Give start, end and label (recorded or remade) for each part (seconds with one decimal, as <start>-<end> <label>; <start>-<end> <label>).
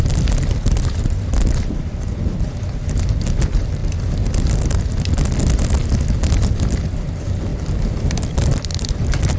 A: 0.0-9.4 remade